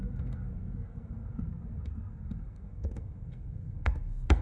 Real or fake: fake